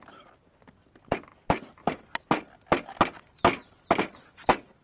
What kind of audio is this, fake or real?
real